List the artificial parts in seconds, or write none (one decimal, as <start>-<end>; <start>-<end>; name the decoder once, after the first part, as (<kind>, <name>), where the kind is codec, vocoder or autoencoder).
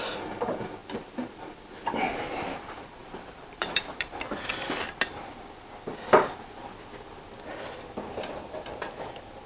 0.8-1.5 (vocoder, BigVGAN v2); 3.0-4.5; 8.4-9.1